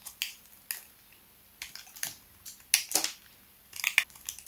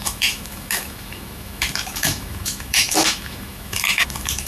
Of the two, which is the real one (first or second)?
first